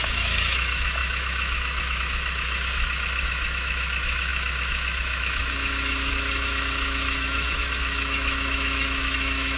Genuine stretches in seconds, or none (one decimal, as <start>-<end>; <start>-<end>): none